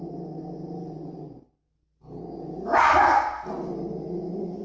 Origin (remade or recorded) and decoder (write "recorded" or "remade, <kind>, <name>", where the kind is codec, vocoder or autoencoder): recorded